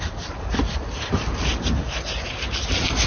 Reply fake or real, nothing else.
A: real